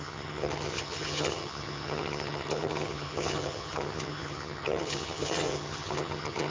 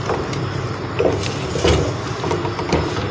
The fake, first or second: first